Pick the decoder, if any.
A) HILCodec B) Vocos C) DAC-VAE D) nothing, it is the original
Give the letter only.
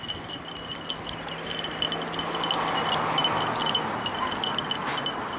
D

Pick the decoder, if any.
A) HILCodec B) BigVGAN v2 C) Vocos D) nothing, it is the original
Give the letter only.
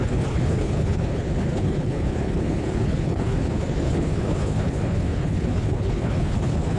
A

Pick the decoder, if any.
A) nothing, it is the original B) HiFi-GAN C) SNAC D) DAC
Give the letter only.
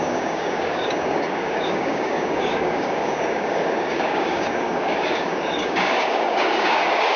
D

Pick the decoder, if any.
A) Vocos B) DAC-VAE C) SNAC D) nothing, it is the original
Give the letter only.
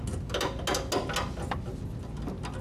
D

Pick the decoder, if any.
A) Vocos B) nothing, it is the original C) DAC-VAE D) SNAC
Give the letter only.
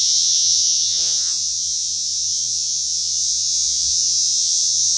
A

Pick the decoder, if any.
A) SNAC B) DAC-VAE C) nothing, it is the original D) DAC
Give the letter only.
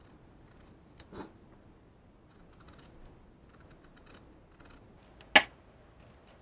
C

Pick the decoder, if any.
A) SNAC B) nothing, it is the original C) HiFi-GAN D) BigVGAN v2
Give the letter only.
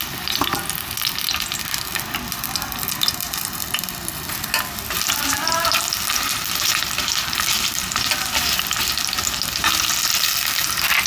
B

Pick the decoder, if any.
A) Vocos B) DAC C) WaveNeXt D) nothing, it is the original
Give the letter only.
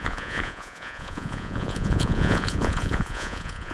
A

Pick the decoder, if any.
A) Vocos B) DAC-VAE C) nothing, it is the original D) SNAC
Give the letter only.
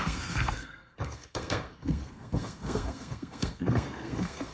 D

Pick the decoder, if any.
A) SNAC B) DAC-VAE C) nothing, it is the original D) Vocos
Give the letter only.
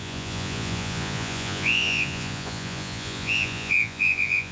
D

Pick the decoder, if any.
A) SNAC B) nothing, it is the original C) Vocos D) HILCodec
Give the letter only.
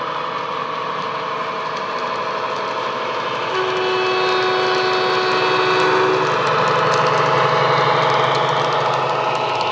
B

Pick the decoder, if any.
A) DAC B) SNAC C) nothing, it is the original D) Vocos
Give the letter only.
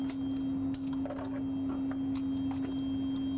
C